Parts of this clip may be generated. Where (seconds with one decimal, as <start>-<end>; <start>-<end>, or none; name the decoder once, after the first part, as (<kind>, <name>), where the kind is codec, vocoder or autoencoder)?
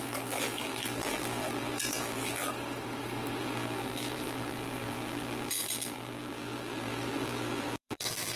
0.0-2.5 (vocoder, BigVGAN v2); 3.4-8.4